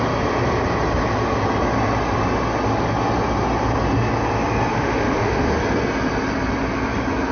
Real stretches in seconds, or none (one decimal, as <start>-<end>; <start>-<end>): 0.0-4.7; 5.5-7.3